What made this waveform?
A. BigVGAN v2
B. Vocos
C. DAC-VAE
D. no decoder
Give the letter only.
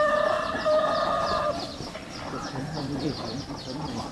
A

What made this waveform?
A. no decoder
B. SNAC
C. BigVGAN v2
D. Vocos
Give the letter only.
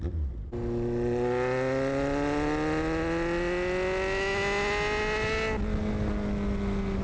A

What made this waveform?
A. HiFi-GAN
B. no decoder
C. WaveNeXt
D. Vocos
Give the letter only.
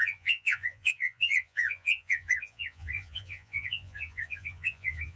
D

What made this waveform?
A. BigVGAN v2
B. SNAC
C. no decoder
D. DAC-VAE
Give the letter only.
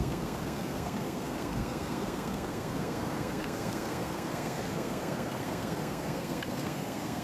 B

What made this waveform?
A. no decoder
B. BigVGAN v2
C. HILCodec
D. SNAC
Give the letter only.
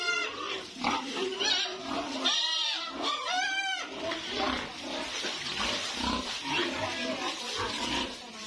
B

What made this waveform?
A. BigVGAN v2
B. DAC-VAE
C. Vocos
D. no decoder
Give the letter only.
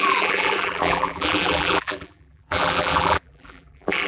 A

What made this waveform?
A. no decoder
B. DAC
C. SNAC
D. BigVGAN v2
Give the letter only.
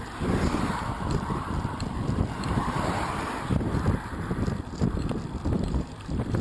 D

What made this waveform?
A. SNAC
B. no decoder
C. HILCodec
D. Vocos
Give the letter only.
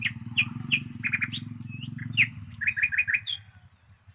B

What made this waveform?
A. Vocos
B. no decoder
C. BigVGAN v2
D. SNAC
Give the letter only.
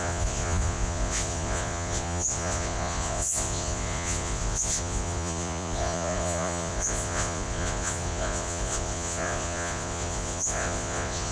A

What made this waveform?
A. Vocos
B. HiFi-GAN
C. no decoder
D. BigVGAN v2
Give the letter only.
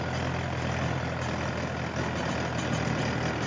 C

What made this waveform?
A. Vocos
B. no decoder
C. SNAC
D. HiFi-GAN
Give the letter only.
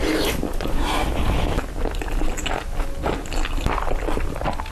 B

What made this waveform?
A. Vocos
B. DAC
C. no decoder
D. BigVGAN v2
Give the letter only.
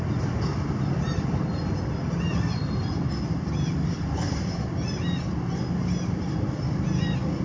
C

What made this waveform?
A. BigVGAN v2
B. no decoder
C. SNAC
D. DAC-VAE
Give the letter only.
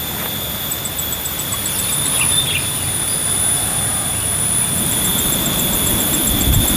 A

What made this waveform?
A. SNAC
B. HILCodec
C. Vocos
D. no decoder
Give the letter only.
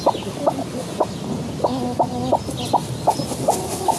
D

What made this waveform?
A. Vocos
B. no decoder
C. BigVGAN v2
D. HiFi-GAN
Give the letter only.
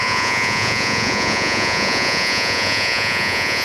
A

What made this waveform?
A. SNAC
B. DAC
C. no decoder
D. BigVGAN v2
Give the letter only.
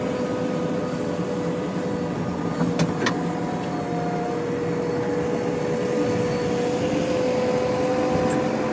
C